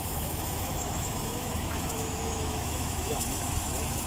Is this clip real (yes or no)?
no